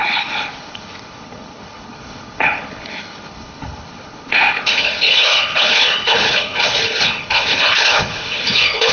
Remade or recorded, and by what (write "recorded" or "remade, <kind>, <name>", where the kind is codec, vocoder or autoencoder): remade, codec, HILCodec